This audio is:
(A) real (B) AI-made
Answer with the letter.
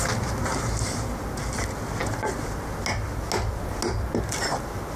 A